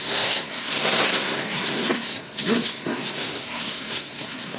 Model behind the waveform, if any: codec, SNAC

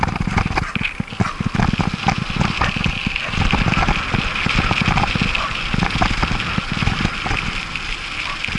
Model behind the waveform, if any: none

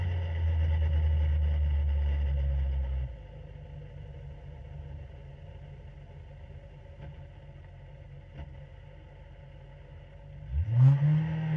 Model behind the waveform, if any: none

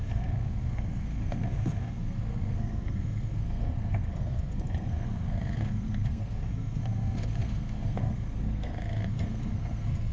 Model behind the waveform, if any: codec, SNAC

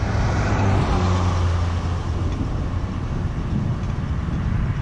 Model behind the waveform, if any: none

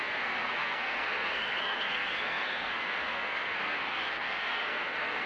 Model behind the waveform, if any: codec, SNAC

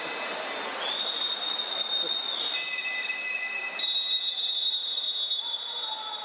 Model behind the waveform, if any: none